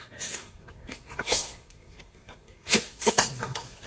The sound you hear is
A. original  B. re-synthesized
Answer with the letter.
B